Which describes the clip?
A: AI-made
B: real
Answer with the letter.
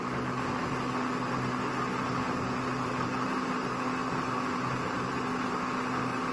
B